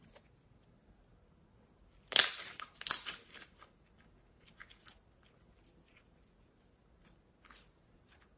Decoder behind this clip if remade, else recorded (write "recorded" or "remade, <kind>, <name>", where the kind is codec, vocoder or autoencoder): recorded